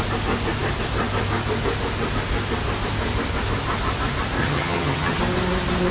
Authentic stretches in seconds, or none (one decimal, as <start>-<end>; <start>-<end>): 0.0-4.4; 5.2-5.9